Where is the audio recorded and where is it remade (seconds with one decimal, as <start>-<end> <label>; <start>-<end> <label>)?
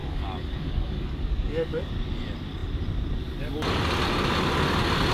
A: 0.0-1.9 remade; 1.9-5.1 recorded